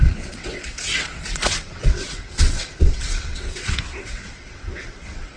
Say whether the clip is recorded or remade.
remade